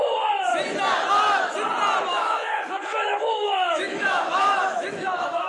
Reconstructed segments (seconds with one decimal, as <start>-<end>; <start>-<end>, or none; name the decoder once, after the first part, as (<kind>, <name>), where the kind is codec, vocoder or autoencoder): 2.1-5.5 (autoencoder, DAC-VAE)